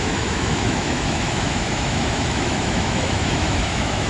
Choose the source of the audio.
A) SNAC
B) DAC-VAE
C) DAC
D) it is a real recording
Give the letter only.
B